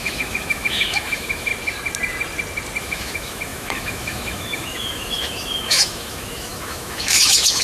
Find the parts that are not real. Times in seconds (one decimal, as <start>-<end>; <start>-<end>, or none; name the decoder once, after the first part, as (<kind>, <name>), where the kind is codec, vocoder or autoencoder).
0.0-1.5 (autoencoder, DAC-VAE); 2.8-7.6